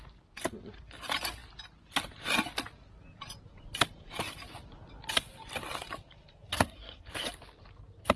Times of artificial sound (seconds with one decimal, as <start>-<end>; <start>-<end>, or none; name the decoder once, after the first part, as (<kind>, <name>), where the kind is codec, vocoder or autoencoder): 6.5-7.1 (codec, SNAC)